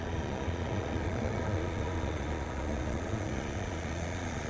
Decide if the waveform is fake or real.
fake